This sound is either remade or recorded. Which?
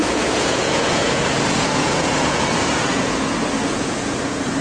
remade